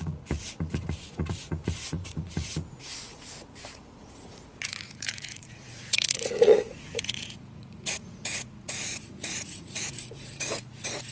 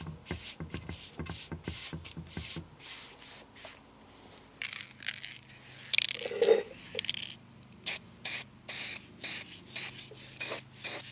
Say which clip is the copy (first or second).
first